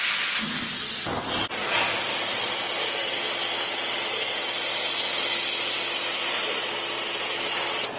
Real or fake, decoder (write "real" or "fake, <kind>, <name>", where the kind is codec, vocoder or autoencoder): real